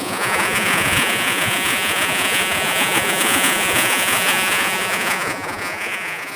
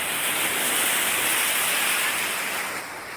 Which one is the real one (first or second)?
second